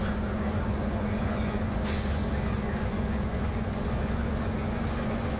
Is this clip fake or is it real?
fake